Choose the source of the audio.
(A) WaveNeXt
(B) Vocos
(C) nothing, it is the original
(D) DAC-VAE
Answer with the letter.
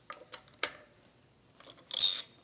C